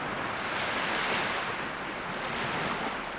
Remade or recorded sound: recorded